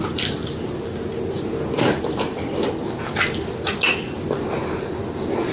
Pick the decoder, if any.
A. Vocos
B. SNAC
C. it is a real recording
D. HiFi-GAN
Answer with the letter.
C